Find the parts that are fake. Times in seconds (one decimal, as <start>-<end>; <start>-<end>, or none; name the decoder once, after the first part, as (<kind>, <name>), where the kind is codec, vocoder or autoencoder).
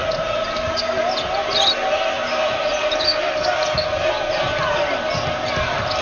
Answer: 0.0-0.6 (vocoder, Vocos); 2.4-2.9